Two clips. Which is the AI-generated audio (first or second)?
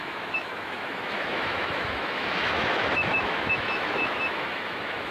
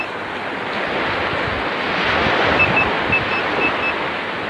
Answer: first